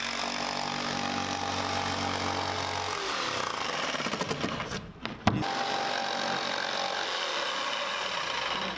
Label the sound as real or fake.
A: real